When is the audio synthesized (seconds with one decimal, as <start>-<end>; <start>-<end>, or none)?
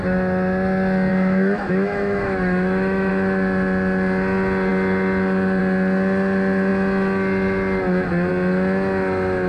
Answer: 1.1-3.1